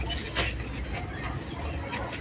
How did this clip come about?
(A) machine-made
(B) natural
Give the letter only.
B